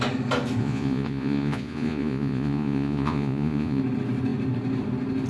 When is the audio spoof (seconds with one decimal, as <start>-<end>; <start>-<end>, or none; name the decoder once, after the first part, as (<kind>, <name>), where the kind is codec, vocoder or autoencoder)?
0.6-3.8 (vocoder, Vocos)